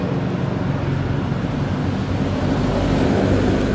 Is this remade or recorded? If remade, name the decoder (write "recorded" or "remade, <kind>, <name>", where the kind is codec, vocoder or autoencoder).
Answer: recorded